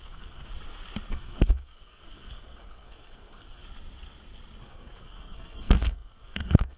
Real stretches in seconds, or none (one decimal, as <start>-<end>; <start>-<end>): 0.5-1.1; 3.6-4.6